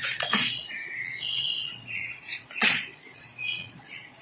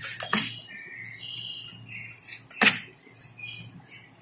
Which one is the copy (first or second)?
first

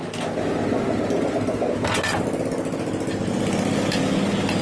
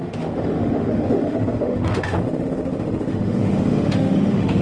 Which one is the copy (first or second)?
second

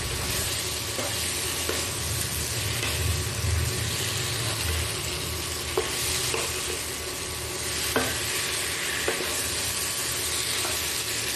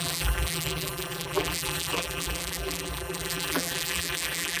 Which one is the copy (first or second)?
second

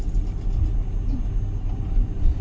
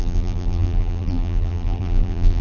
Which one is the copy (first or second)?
second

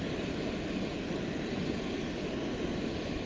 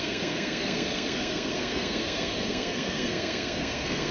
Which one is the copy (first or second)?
second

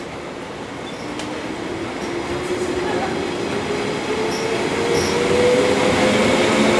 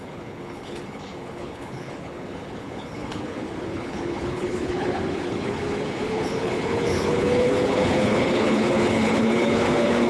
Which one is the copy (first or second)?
second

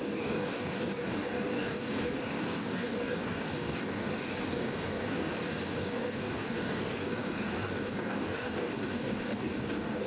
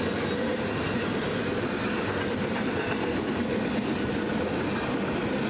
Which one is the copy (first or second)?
first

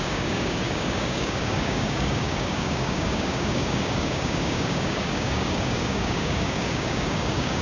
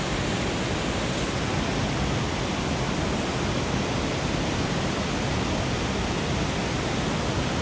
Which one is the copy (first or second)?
first